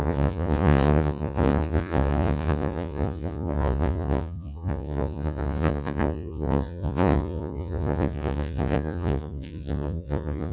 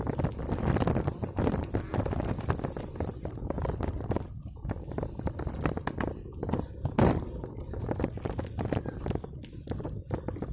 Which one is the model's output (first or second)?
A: first